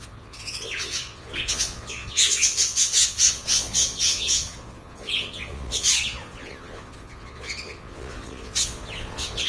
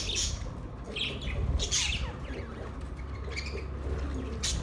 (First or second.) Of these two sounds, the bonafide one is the second